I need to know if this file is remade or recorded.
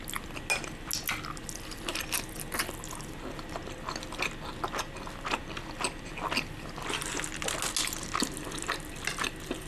recorded